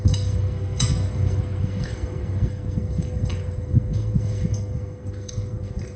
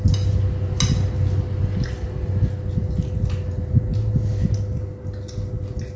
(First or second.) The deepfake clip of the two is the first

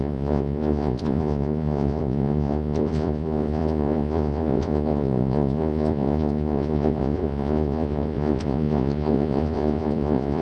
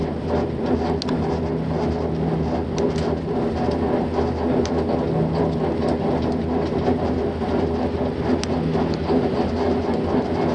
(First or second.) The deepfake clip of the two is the first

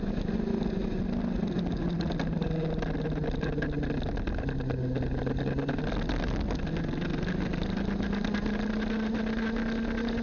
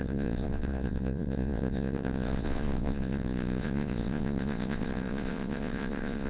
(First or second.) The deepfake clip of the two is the second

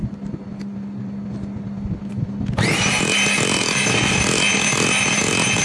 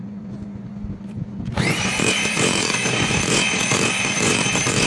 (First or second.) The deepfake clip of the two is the second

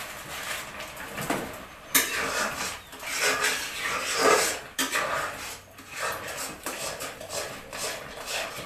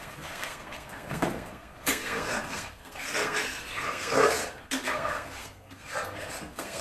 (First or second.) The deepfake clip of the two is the second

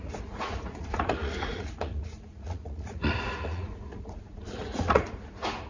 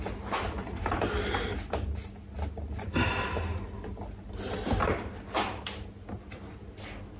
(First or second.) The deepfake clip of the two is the first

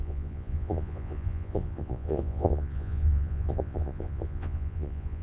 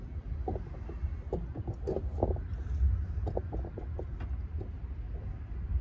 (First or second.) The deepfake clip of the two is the first